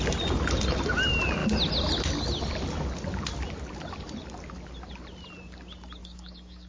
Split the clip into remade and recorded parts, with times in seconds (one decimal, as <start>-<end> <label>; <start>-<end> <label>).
0.0-6.0 recorded; 6.0-6.7 remade